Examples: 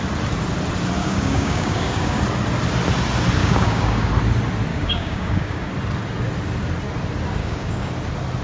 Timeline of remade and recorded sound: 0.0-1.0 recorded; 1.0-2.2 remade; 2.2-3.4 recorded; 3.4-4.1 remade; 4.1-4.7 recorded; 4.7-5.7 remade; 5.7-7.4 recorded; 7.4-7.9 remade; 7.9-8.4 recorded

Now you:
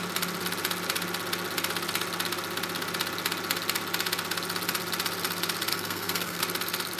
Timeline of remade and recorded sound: 0.0-5.7 recorded; 5.7-6.4 remade; 6.4-7.0 recorded

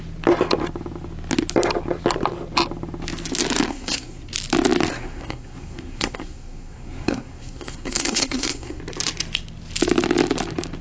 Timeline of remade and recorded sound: 0.0-3.7 recorded; 3.7-4.3 remade; 4.3-4.9 recorded; 4.9-8.8 remade; 8.8-10.8 recorded

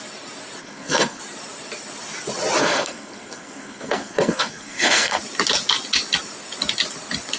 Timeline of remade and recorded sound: 0.0-0.6 recorded; 0.6-1.2 remade; 1.2-2.6 recorded; 2.6-5.2 remade; 5.2-7.4 recorded